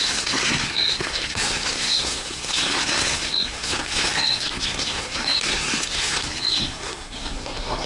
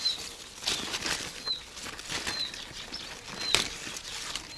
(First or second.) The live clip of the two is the second